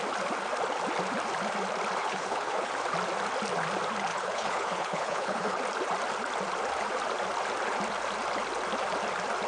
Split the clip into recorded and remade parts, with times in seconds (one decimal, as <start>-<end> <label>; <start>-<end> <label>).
0.0-2.0 recorded; 2.0-2.7 remade; 2.7-4.1 recorded; 4.1-5.6 remade; 5.6-9.5 recorded